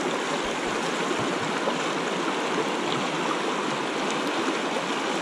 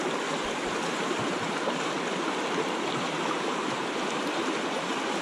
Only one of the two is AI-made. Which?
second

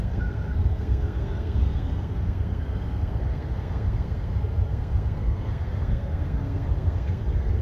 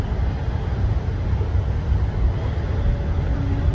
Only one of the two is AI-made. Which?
first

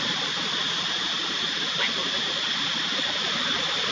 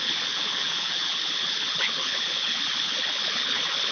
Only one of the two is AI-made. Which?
second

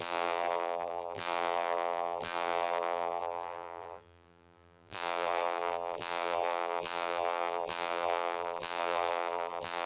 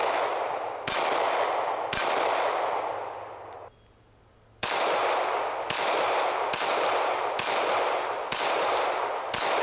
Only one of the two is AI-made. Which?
first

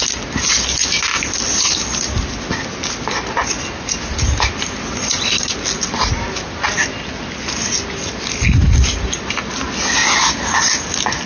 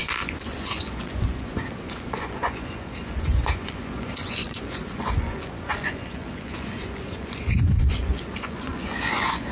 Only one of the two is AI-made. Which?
second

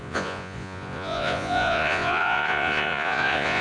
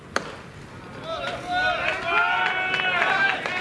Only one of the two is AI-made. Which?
first